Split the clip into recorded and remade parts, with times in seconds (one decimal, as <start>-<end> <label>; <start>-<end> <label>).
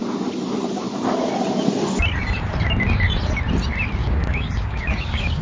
0.0-4.0 recorded; 4.0-5.4 remade